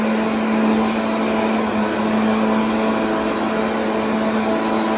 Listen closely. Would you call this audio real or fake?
real